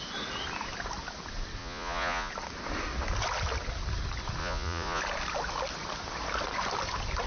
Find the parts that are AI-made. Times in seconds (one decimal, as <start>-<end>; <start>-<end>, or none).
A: 1.6-2.3; 4.4-5.0